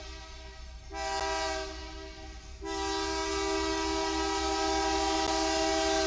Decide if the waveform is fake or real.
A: real